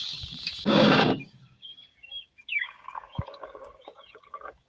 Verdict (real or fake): fake